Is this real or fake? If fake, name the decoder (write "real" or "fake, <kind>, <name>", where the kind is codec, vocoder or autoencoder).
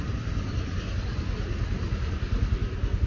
real